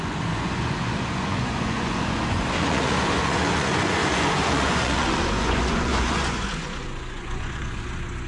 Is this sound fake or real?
fake